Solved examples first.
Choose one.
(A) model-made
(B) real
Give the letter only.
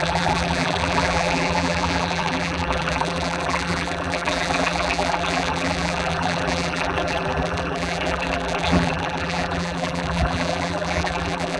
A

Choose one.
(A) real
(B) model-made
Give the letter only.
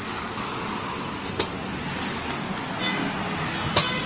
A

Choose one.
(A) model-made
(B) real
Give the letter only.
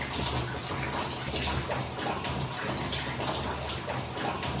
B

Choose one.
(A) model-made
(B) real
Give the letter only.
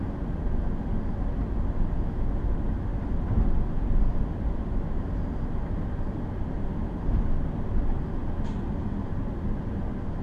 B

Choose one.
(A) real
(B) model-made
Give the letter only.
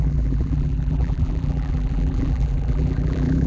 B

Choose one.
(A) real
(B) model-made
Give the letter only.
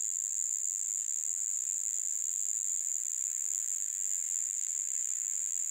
B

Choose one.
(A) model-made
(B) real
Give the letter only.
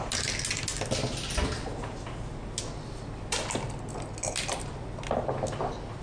B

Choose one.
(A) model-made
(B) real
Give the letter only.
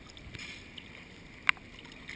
B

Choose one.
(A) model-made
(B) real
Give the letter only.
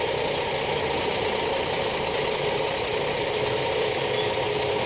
B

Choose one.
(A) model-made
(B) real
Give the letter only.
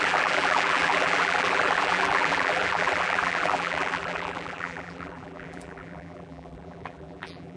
A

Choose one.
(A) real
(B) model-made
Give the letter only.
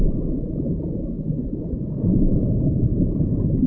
B